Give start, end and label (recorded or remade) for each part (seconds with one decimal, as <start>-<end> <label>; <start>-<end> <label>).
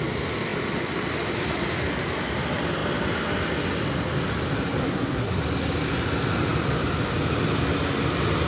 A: 0.0-4.8 recorded; 4.8-5.4 remade; 5.4-8.5 recorded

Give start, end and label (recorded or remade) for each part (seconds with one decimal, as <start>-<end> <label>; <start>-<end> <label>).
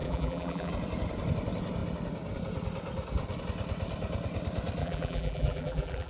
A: 0.0-0.7 remade; 0.7-4.8 recorded; 4.8-6.1 remade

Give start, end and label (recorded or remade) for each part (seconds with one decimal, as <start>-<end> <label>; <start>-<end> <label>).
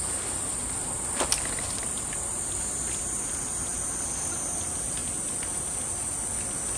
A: 0.0-6.8 recorded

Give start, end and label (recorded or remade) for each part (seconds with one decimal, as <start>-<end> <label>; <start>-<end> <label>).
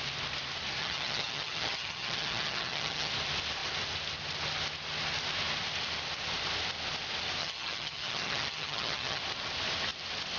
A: 0.0-0.8 recorded; 0.8-3.1 remade; 3.1-7.4 recorded; 7.4-9.2 remade; 9.2-10.4 recorded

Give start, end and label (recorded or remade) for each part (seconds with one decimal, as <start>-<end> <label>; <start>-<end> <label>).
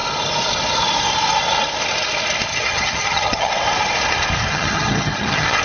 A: 0.0-2.5 recorded; 2.5-3.5 remade; 3.5-4.5 recorded; 4.5-5.6 remade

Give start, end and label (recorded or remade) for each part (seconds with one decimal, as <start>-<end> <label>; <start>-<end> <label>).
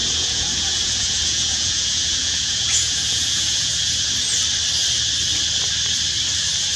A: 0.0-4.1 remade; 4.1-6.8 recorded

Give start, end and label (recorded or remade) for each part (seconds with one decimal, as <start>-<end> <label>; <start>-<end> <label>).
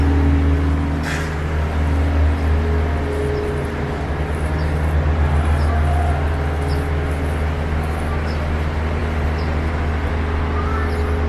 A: 0.0-11.3 recorded